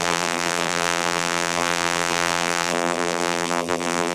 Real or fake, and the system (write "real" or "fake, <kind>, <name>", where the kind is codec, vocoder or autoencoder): fake, vocoder, BigVGAN v2